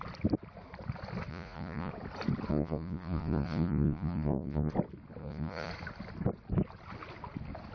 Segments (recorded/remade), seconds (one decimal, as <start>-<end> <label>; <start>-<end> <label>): 0.0-1.3 recorded; 1.3-1.9 remade; 1.9-2.5 recorded; 2.5-4.7 remade; 4.7-5.2 recorded; 5.2-5.7 remade; 5.7-7.7 recorded

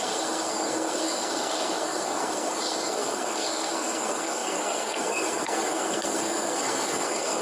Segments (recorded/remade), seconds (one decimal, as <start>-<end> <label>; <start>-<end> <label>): 0.0-7.4 remade

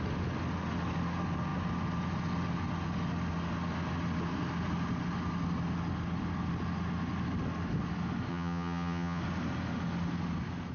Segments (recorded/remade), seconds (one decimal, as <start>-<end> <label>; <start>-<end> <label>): 0.0-8.3 recorded; 8.3-9.2 remade; 9.2-10.7 recorded

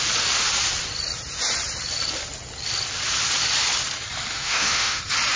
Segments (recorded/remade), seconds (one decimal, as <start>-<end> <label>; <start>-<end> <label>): 0.0-4.3 recorded; 4.3-5.0 remade; 5.0-5.4 recorded

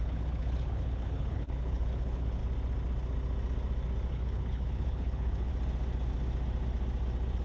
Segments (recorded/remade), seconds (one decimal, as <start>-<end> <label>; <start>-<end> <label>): 0.0-2.4 remade; 2.4-4.1 recorded; 4.1-5.5 remade; 5.5-7.4 recorded

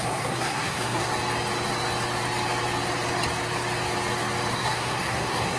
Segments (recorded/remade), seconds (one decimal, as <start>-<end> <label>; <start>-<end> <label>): 0.0-1.1 remade; 1.1-4.5 recorded; 4.5-5.6 remade